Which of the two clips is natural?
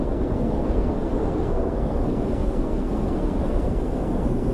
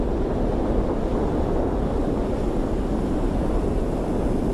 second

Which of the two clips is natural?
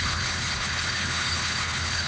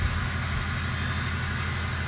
second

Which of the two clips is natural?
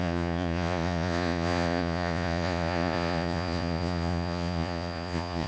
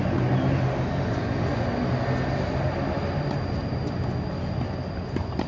second